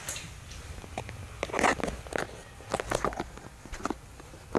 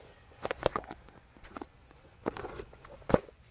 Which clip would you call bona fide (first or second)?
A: first